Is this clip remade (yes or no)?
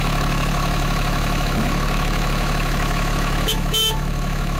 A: yes